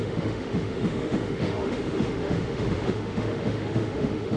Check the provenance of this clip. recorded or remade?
remade